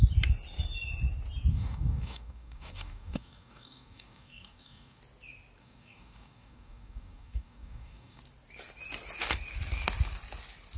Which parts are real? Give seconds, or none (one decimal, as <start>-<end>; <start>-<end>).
0.0-1.5; 5.0-5.6; 8.2-10.8